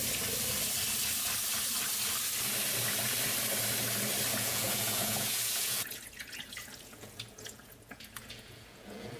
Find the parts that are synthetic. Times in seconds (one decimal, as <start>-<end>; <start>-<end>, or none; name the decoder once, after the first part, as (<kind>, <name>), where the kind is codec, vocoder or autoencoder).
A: 4.3-9.2 (vocoder, Vocos)